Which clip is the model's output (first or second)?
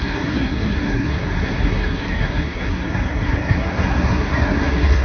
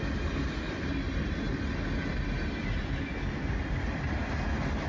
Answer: first